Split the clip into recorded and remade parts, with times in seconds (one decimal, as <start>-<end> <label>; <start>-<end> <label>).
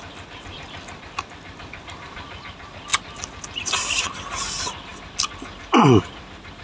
0.0-6.6 recorded